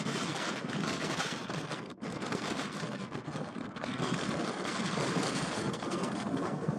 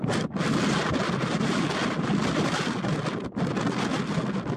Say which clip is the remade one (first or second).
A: first